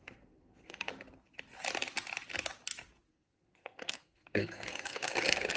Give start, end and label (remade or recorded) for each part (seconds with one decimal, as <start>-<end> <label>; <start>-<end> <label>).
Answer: 0.0-0.9 remade; 0.9-3.1 recorded; 3.1-5.6 remade